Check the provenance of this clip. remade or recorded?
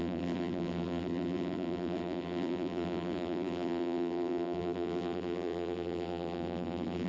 remade